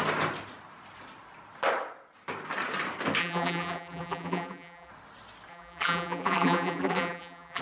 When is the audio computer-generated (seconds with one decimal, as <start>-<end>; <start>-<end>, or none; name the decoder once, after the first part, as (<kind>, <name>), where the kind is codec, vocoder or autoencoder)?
3.2-4.9 (vocoder, BigVGAN v2); 5.5-7.6